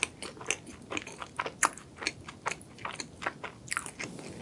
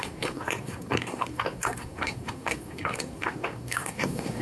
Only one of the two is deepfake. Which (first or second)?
second